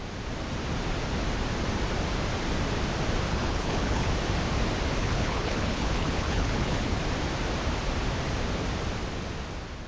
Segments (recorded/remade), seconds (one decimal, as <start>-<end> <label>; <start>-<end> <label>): 0.0-3.3 recorded; 3.3-4.1 remade; 4.1-5.0 recorded; 5.0-7.0 remade; 7.0-9.9 recorded